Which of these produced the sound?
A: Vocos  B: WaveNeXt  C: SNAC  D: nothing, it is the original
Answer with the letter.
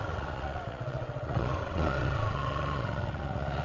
B